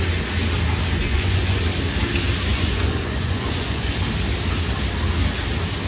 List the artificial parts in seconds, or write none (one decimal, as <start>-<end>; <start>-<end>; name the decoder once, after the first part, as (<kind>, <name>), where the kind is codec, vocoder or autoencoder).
1.0-1.6 (vocoder, Vocos); 2.5-3.9